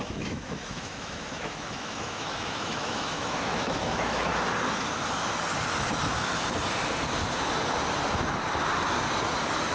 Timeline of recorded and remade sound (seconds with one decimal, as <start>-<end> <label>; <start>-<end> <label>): 0.0-4.3 remade; 4.3-9.7 recorded